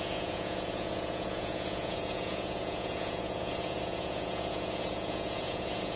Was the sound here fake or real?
fake